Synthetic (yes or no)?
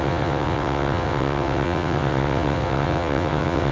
yes